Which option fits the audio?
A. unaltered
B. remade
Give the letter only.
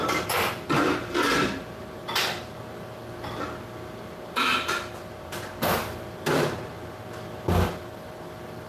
A